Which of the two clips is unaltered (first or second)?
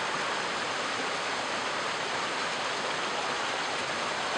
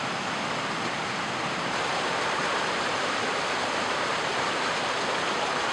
first